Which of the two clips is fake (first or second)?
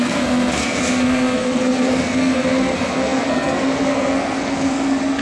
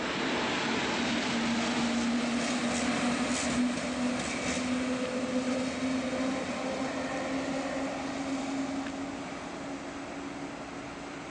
first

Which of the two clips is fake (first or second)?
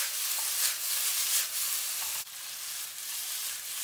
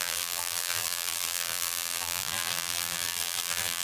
second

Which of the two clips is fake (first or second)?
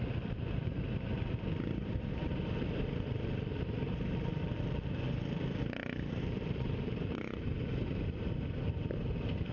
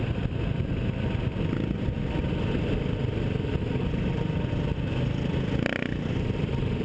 first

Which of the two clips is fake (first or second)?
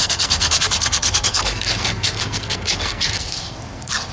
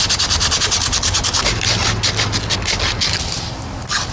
first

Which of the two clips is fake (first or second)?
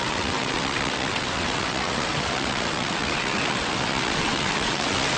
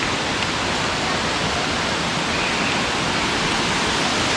first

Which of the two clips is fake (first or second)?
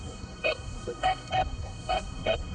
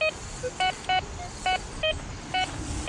first